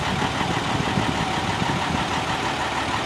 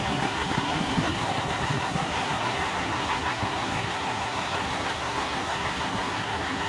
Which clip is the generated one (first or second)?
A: second